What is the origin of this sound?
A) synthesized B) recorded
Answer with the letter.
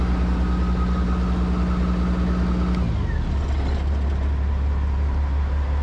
B